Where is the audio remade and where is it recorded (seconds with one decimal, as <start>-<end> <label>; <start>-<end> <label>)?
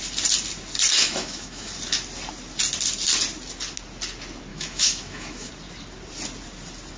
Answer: 0.0-1.0 recorded; 1.0-1.7 remade; 1.7-4.5 recorded; 4.5-5.5 remade; 5.5-7.0 recorded